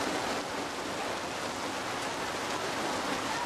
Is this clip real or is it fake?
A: real